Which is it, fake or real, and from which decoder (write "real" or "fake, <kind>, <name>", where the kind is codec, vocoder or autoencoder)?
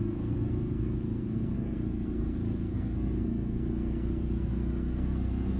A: fake, codec, SNAC